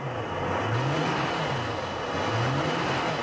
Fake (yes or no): no